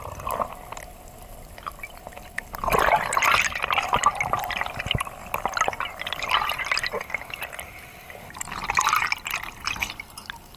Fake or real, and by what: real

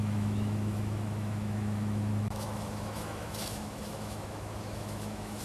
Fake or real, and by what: fake, autoencoder, DAC-VAE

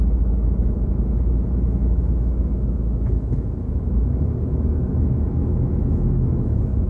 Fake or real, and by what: fake, autoencoder, DAC-VAE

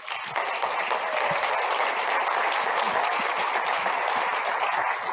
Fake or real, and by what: real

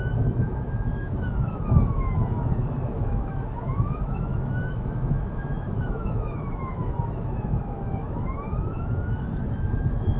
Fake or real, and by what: fake, autoencoder, DAC-VAE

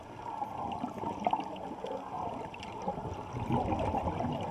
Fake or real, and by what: real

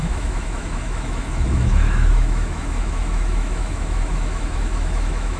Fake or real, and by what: fake, autoencoder, DAC-VAE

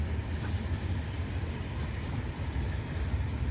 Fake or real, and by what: real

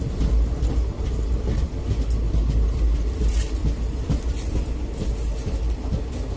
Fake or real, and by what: real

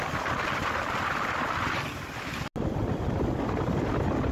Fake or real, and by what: real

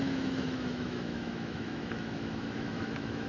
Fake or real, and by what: fake, autoencoder, DAC-VAE